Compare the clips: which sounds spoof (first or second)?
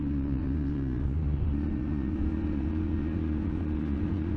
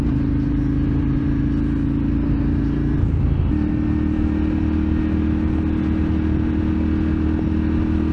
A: first